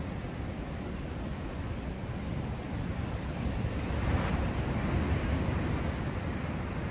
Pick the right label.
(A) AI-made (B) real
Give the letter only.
B